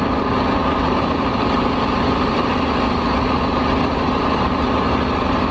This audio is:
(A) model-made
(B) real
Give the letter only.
A